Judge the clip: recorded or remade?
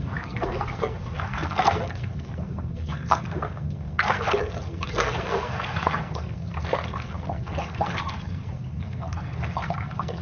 remade